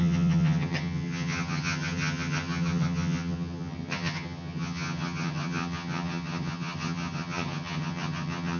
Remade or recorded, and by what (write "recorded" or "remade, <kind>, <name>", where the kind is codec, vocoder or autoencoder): remade, vocoder, HiFi-GAN